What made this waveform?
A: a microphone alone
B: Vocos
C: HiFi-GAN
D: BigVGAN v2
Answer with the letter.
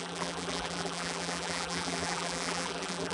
D